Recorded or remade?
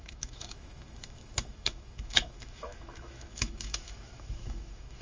remade